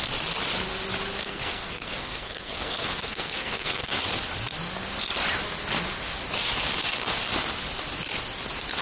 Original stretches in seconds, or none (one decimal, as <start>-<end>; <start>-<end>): 0.0-1.2; 4.0-8.8